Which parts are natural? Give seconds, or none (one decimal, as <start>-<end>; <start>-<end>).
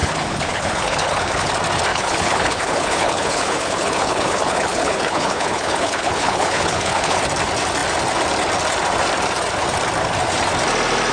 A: 1.5-1.9; 7.2-11.1